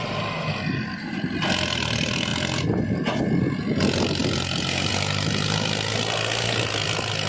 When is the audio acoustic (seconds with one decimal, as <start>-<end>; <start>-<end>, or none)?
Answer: 0.0-7.3